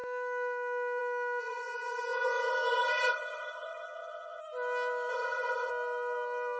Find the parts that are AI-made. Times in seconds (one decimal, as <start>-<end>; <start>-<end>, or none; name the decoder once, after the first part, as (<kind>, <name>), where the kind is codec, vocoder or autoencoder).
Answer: 1.4-4.4 (vocoder, HiFi-GAN); 5.1-5.7